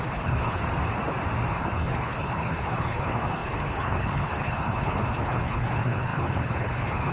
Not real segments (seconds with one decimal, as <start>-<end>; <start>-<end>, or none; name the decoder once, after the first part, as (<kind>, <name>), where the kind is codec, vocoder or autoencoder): 0.0-0.6 (codec, HILCodec); 1.5-7.1